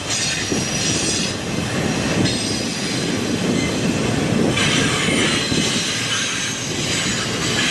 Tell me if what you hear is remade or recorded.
recorded